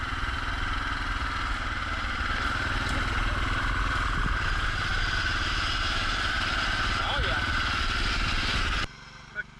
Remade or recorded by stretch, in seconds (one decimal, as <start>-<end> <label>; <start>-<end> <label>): 0.0-9.6 recorded